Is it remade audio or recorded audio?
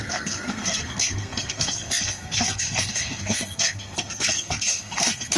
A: remade